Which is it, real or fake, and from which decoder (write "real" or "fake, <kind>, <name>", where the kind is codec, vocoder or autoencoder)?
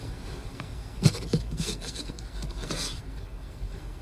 fake, codec, SNAC